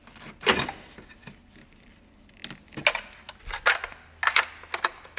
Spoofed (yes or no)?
no